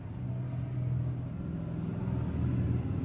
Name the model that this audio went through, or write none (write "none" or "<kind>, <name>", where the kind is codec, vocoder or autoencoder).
none